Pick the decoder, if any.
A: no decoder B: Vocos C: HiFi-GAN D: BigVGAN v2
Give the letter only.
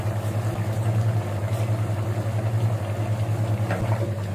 A